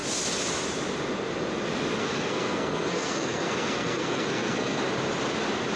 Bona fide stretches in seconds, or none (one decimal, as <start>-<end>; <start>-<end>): 0.0-2.0; 4.8-5.8